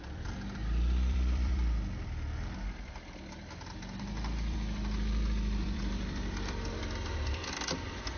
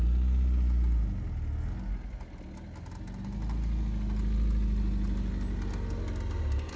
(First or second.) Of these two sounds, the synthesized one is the first